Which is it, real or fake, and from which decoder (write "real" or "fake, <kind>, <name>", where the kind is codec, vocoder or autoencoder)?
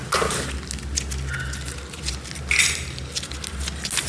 real